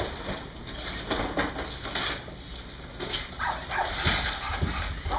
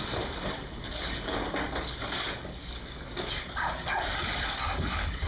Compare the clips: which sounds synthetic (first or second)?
second